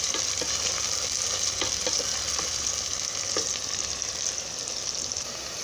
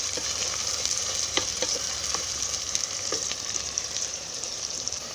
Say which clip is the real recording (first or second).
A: first